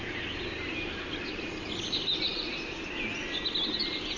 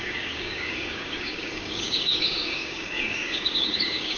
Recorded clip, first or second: first